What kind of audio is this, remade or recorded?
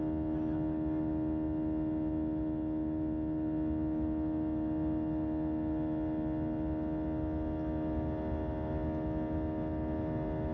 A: recorded